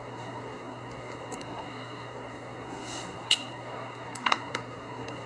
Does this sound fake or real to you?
fake